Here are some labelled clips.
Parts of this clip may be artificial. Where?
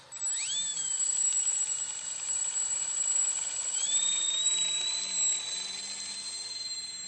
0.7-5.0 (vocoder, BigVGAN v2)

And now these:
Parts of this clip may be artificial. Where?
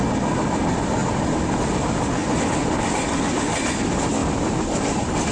1.0-1.7 (vocoder, BigVGAN v2); 2.2-3.5; 4.2-5.3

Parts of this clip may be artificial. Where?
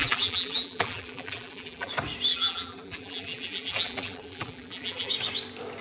0.0-1.9 (vocoder, BigVGAN v2); 2.3-5.1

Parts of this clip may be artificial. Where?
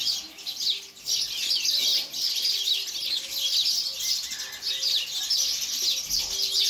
none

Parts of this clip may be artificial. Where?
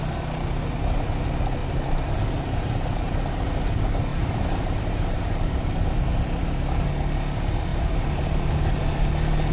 1.6-3.3 (vocoder, BigVGAN v2); 4.1-5.4; 7.7-8.5